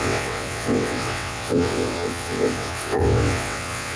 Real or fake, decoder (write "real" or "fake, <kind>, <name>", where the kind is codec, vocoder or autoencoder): fake, vocoder, WaveNeXt